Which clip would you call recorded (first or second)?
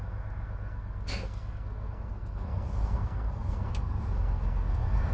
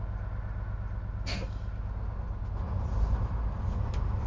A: second